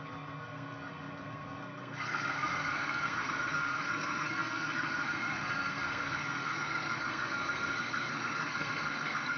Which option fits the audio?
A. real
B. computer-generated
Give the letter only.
B